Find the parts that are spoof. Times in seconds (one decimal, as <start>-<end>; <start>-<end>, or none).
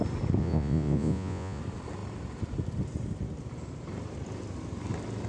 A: 0.4-1.6